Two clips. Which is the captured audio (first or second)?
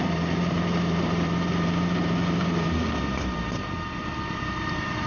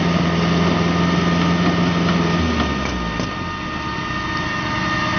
second